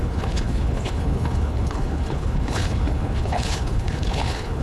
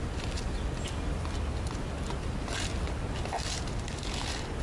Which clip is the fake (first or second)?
first